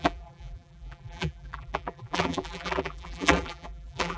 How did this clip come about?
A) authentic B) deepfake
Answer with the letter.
B